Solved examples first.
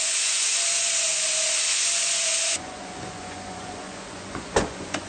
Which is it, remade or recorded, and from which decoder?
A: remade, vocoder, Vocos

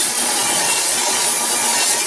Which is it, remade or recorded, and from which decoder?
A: remade, vocoder, Vocos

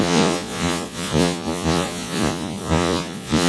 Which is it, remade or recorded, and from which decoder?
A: remade, vocoder, Vocos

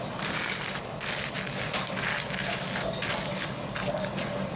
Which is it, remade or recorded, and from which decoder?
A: recorded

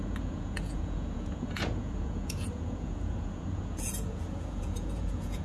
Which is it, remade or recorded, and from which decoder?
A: remade, vocoder, Vocos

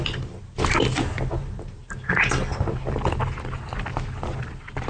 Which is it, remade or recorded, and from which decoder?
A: recorded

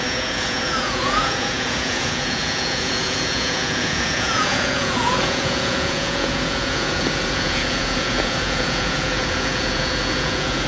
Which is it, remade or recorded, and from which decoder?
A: remade, vocoder, Vocos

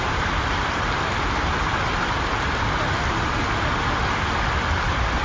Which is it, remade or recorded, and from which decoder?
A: recorded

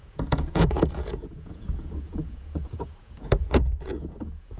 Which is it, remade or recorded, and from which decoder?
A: remade, vocoder, Vocos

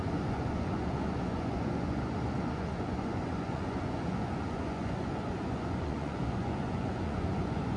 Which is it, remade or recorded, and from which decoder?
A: remade, vocoder, Vocos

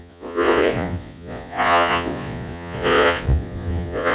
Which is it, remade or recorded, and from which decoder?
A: remade, vocoder, Vocos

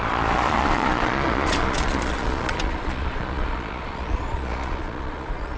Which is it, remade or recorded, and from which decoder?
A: remade, vocoder, Vocos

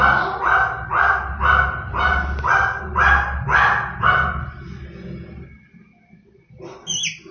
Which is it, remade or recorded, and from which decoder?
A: recorded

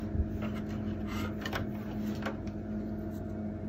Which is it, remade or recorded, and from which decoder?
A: recorded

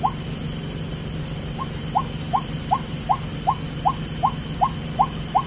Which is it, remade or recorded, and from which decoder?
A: recorded